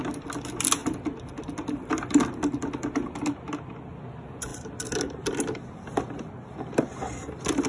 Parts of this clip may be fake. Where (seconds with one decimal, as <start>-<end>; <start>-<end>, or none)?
none